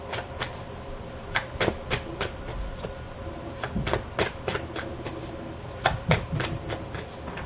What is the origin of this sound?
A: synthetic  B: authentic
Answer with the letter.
B